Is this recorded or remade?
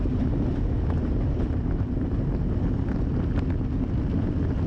recorded